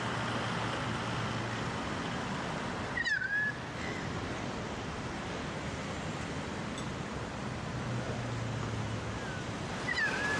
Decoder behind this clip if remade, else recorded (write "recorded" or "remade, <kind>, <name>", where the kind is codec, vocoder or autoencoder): recorded